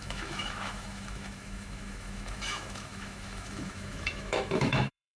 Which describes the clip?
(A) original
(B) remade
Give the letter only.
B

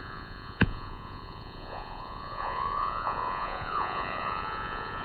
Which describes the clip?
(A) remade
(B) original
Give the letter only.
A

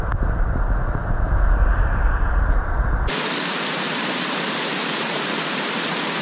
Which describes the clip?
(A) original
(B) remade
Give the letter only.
B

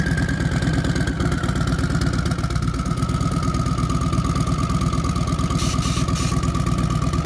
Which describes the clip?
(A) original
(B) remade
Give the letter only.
A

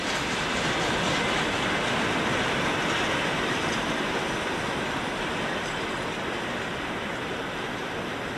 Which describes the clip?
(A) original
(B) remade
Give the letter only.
A